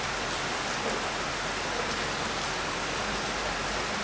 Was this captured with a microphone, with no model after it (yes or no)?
yes